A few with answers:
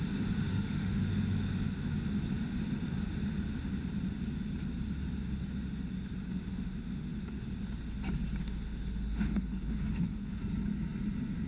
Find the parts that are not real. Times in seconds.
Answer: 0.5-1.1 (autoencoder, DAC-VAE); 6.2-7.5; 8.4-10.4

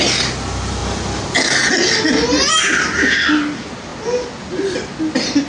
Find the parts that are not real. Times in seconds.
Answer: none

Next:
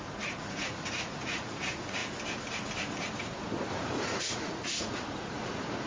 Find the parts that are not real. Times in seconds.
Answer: 0.0-2.0 (vocoder, Vocos); 3.2-5.9